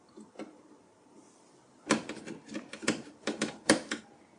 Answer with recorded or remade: recorded